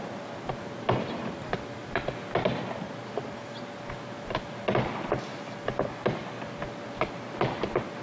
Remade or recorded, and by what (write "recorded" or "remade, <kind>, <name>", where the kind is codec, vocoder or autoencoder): recorded